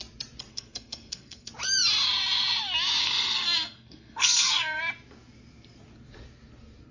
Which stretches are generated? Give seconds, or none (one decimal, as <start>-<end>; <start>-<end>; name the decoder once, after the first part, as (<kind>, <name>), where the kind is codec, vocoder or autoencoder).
0.5-1.5 (codec, SNAC); 3.0-4.8